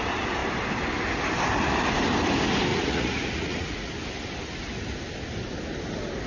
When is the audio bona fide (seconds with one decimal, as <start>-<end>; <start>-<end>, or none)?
0.0-2.7; 3.9-6.3